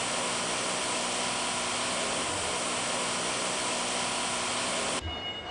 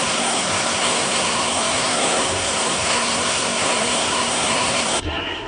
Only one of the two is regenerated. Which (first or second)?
second